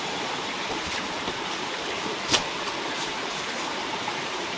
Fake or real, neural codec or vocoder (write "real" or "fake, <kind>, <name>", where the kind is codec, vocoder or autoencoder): fake, vocoder, BigVGAN v2